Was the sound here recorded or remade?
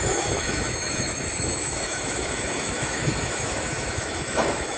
remade